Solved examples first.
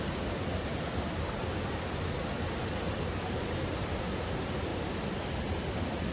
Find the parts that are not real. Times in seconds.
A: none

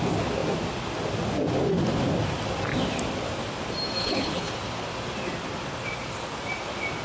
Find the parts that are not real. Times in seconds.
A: 4.0-4.5 (codec, HILCodec)

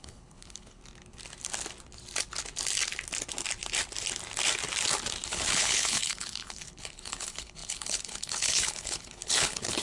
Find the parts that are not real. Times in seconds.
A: 0.0-0.8 (codec, HILCodec); 5.3-9.8

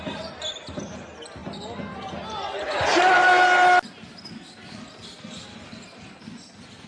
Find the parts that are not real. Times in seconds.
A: none

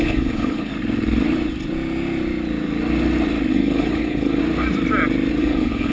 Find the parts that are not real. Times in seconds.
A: 0.0-0.7 (codec, HILCodec); 3.5-4.4; 5.4-5.9

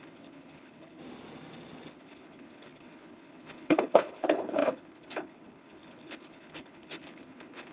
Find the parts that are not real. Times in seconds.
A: 0.0-1.0 (codec, HILCodec); 1.9-7.7

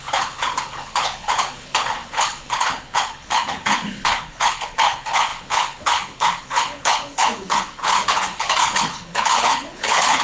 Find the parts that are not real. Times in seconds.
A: 0.0-10.2 (codec, HILCodec)